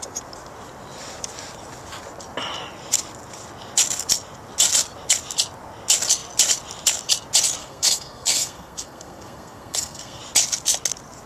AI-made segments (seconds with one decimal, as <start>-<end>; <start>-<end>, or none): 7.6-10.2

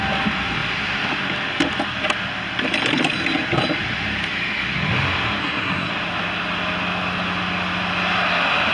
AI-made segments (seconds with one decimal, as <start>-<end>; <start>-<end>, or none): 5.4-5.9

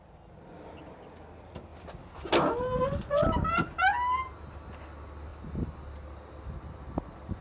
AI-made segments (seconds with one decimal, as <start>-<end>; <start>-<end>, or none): none